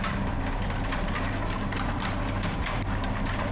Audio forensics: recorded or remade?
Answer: remade